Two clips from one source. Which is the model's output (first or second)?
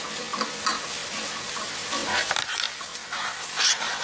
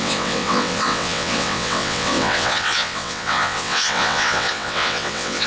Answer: second